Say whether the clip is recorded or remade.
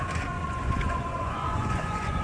remade